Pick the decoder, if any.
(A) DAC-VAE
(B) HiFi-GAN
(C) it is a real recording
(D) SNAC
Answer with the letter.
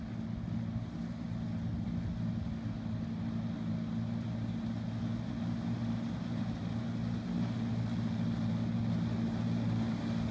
C